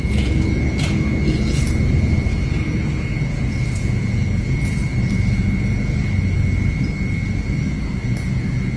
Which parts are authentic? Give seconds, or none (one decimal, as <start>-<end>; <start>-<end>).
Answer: 4.8-7.7